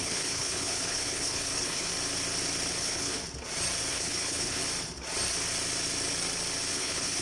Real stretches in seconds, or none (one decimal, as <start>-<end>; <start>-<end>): 1.9-2.7; 3.2-3.9; 4.6-6.7